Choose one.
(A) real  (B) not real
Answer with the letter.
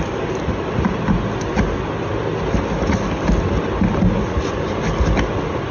A